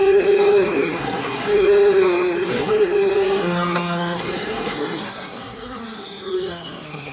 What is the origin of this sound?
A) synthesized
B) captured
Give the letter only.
A